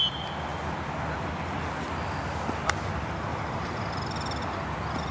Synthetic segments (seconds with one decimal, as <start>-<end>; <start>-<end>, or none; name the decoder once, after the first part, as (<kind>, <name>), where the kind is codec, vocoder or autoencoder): 3.3-3.9 (vocoder, BigVGAN v2)